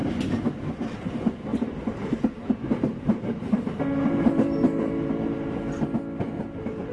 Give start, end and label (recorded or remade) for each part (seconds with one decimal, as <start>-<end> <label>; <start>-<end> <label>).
0.0-1.5 recorded; 1.5-5.6 remade; 5.6-6.9 recorded